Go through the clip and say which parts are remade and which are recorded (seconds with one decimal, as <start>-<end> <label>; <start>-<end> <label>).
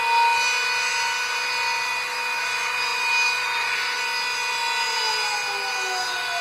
0.0-6.4 recorded